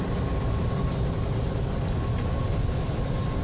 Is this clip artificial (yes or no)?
no